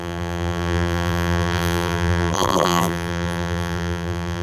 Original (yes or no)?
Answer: no